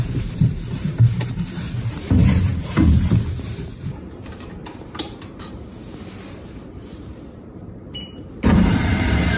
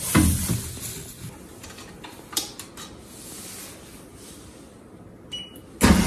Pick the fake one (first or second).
first